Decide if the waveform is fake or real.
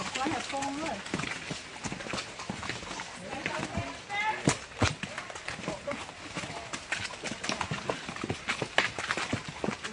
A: real